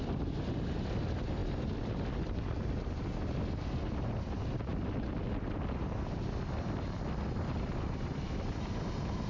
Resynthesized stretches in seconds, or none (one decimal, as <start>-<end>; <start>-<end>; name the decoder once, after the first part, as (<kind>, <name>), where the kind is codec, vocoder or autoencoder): 0.0-1.4 (vocoder, BigVGAN v2); 2.2-4.7; 7.0-9.3

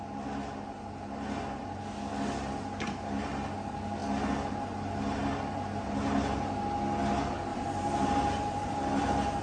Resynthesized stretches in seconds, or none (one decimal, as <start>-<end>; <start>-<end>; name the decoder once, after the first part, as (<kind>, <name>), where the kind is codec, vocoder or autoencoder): 7.5-8.8 (vocoder, BigVGAN v2)

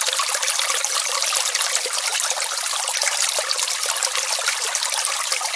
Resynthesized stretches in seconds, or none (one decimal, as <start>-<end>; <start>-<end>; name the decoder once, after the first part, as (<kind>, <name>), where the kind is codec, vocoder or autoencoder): none

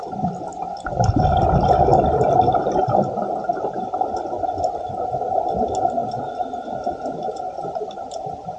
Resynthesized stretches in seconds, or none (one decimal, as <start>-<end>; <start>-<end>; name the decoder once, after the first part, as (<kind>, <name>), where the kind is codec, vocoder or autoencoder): 0.0-1.9 (vocoder, BigVGAN v2); 2.7-3.5; 4.4-8.6

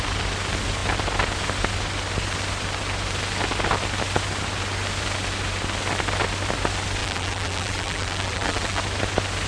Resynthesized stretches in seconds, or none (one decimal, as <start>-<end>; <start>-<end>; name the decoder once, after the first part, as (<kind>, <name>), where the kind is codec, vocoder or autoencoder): 7.0-8.8 (vocoder, BigVGAN v2)